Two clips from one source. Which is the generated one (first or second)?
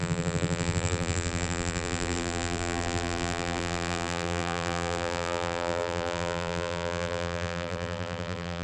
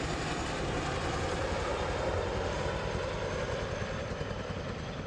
first